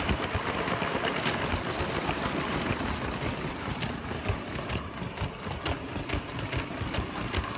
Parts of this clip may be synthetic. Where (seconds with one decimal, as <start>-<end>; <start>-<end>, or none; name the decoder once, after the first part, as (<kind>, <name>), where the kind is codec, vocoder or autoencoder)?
none